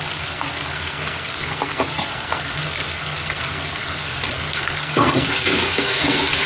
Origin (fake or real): fake